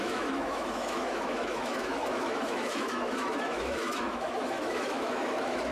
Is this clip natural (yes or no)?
no